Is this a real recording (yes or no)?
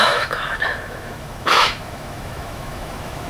no